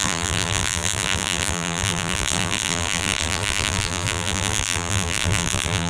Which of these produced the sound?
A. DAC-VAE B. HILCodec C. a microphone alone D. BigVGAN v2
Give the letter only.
D